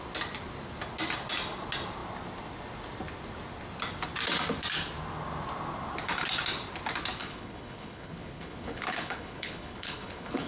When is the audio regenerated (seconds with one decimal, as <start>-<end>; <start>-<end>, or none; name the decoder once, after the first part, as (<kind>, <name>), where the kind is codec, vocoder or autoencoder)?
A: 7.2-10.5 (codec, HILCodec)